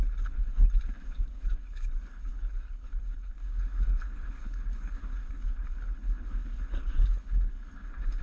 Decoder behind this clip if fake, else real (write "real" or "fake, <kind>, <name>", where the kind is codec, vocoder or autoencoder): fake, codec, HILCodec